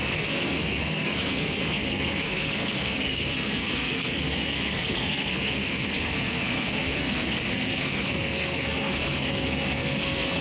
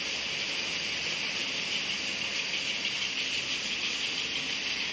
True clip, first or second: second